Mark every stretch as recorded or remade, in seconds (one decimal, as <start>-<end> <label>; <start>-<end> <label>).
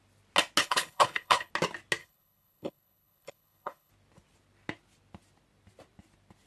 0.0-0.6 recorded; 0.6-1.5 remade; 1.5-2.0 recorded; 2.0-3.9 remade; 3.9-6.5 recorded